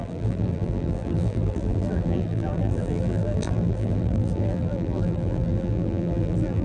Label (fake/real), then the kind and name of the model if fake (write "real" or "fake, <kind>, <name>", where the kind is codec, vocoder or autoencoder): fake, vocoder, BigVGAN v2